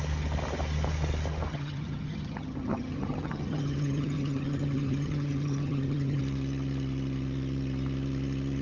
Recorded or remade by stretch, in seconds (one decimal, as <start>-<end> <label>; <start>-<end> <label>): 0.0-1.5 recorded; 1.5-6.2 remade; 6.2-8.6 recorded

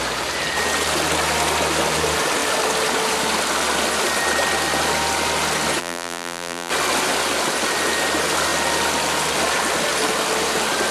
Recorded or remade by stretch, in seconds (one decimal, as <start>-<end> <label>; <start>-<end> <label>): 0.0-5.8 recorded; 5.8-6.7 remade; 6.7-10.9 recorded

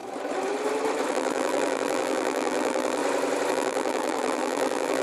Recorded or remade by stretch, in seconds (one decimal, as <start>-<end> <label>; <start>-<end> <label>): 0.0-1.1 recorded; 1.1-3.0 remade; 3.0-3.5 recorded; 3.5-5.0 remade

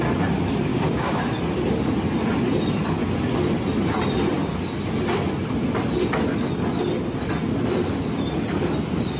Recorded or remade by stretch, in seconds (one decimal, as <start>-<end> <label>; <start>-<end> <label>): 0.0-0.7 recorded; 0.7-1.2 remade; 1.2-9.2 recorded

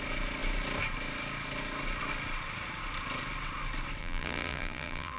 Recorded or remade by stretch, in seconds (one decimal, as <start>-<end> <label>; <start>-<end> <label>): 0.0-4.0 recorded; 4.0-5.2 remade